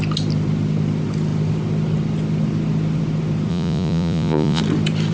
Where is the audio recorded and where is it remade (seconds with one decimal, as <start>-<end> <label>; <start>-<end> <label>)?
0.0-3.5 recorded; 3.5-4.6 remade; 4.6-5.1 recorded